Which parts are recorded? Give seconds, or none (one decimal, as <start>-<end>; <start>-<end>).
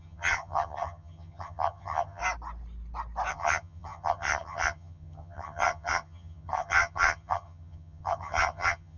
2.2-3.3